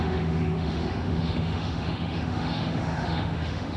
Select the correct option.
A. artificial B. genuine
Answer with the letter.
A